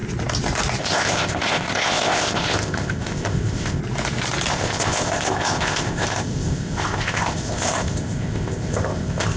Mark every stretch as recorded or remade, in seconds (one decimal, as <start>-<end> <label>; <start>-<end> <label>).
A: 0.0-0.8 recorded; 0.8-3.8 remade; 3.8-4.5 recorded; 4.5-9.4 remade